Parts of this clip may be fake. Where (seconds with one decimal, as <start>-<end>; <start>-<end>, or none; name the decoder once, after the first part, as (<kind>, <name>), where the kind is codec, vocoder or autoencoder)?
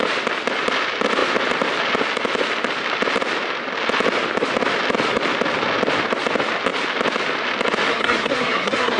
7.9-9.0 (codec, SNAC)